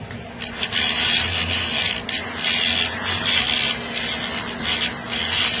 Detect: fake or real real